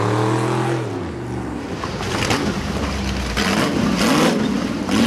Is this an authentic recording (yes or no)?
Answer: yes